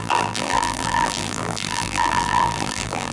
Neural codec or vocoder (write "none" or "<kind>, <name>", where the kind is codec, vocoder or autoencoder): vocoder, BigVGAN v2